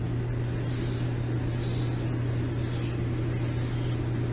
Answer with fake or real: real